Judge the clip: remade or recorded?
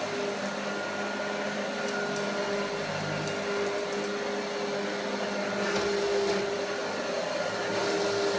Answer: recorded